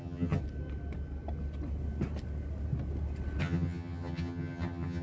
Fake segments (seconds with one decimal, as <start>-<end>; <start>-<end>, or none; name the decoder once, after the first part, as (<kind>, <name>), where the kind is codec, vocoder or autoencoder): 0.0-0.4 (vocoder, HiFi-GAN); 3.4-5.0